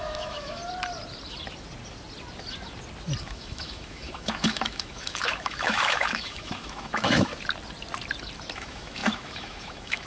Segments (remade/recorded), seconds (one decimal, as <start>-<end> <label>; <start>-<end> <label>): 0.0-0.6 remade; 0.6-3.2 recorded; 3.2-7.3 remade; 7.3-8.5 recorded; 8.5-10.1 remade